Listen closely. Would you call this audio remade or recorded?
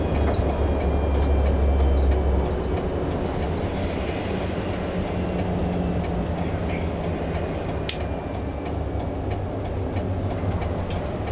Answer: recorded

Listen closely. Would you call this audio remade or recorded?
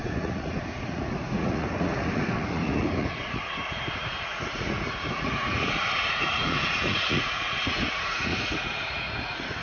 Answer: remade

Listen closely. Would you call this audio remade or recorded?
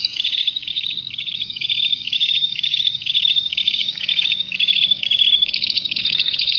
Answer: remade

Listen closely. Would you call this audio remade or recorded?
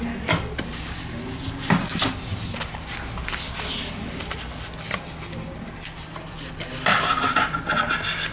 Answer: recorded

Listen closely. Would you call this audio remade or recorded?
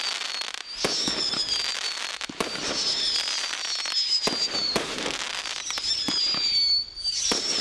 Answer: recorded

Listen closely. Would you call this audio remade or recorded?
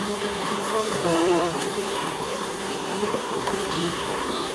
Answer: remade